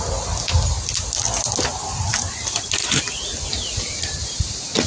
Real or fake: real